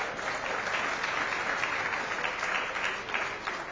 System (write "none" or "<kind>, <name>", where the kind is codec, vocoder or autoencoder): none